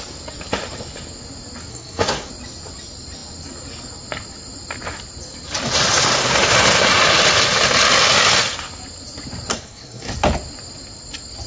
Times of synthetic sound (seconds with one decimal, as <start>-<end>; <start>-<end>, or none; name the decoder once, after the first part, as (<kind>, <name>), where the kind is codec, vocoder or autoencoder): 1.7-2.3 (codec, SNAC); 9.5-10.1